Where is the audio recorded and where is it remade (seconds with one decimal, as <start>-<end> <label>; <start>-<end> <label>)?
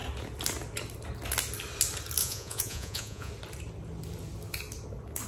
0.0-2.2 recorded; 2.2-3.3 remade; 3.3-5.3 recorded